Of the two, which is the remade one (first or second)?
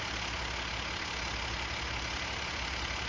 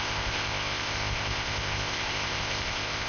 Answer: second